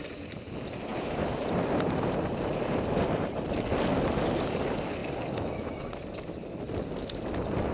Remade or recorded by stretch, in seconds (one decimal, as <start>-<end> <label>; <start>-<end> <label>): 0.0-0.9 recorded; 0.9-3.6 remade; 3.6-7.7 recorded